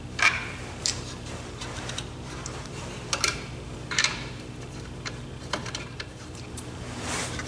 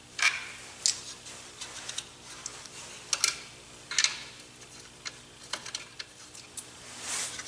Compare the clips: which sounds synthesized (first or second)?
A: first